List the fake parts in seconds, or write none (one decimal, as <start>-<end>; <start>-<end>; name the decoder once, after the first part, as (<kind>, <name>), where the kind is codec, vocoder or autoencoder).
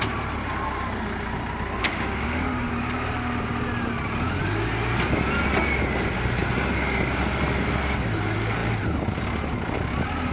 1.8-2.7 (autoencoder, DAC-VAE)